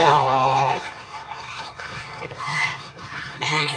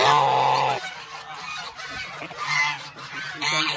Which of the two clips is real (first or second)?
second